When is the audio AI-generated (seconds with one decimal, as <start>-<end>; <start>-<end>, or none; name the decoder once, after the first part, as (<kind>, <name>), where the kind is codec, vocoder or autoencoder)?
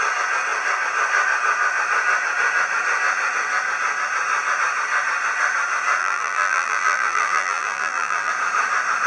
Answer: 6.0-8.3 (vocoder, BigVGAN v2)